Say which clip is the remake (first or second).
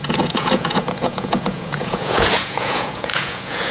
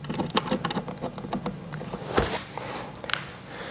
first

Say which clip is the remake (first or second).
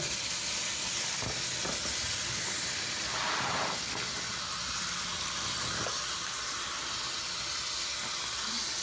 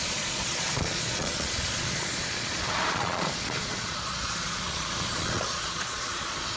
second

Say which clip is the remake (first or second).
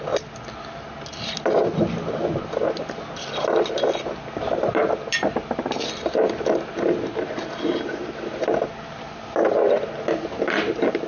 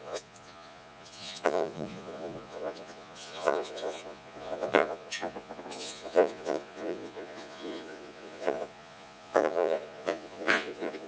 second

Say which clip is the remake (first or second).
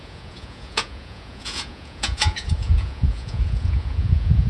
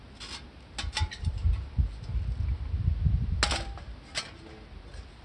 first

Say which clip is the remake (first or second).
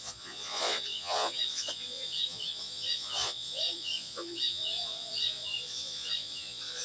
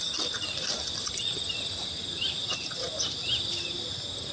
first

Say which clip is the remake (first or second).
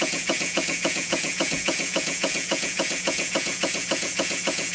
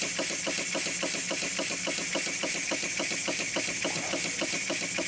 first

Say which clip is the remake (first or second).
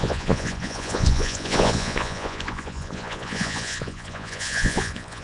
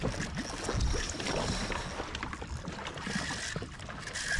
first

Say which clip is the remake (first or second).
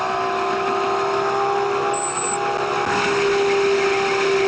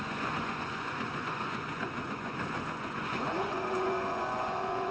second